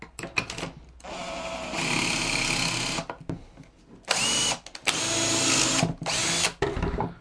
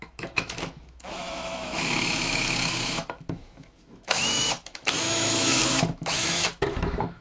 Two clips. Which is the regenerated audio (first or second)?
second